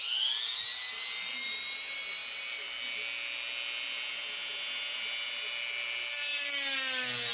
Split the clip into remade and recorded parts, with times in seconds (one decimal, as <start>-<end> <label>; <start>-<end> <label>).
0.0-7.3 recorded